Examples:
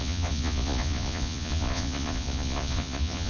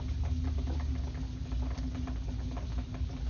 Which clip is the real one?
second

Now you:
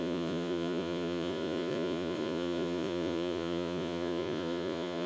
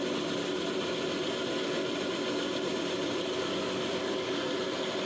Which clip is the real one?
second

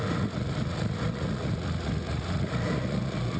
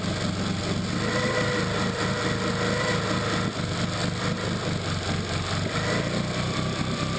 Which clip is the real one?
second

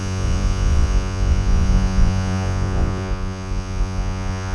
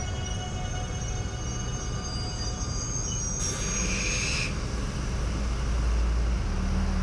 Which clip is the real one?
second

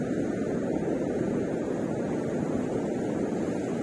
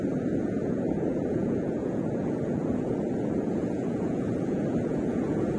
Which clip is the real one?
first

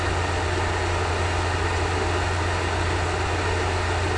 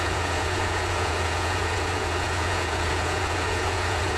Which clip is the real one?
first